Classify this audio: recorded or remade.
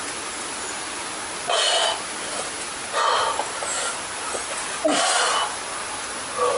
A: recorded